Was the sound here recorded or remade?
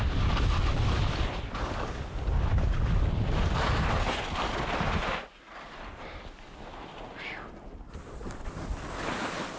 recorded